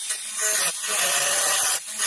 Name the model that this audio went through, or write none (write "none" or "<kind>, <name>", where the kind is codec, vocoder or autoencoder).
none